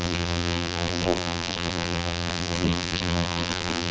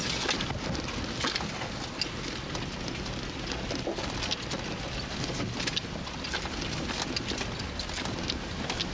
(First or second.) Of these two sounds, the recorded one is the second